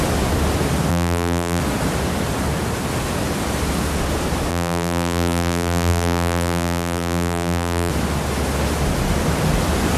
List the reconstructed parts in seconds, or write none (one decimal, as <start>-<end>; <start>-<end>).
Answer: 0.9-1.6; 4.5-7.9